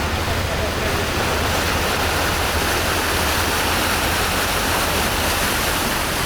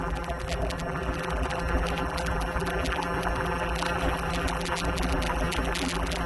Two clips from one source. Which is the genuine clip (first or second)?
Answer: first